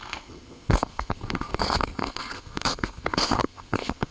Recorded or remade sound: remade